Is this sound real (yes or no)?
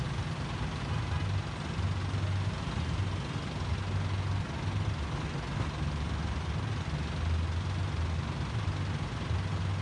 yes